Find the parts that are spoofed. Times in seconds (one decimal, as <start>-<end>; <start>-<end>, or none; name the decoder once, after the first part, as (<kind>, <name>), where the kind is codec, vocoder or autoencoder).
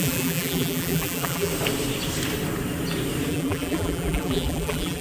0.0-1.5 (vocoder, BigVGAN v2); 3.3-5.0